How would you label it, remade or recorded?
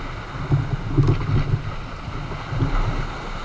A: recorded